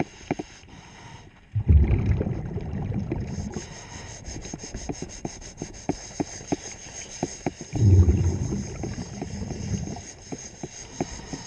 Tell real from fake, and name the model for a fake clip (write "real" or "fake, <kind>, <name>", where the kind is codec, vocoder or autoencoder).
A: real